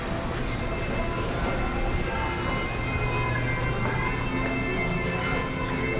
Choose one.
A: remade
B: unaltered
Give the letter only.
B